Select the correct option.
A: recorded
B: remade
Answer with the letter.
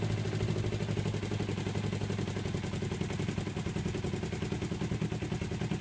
A